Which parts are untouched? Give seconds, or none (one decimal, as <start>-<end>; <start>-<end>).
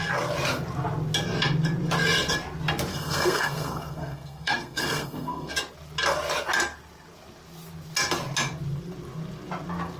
0.0-2.9; 5.5-10.0